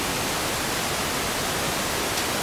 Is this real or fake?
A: real